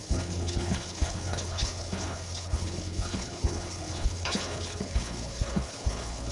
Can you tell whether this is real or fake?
fake